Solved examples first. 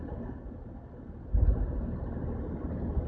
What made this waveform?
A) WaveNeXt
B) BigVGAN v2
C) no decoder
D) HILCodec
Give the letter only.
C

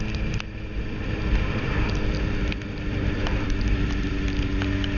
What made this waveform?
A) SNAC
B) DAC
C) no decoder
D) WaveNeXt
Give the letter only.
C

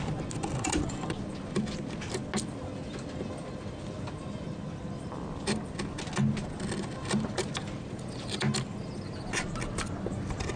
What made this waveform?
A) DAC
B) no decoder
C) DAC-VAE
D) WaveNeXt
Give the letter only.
B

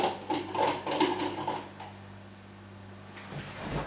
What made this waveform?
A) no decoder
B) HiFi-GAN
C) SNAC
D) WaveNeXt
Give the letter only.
A